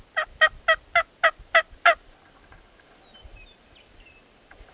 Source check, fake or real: real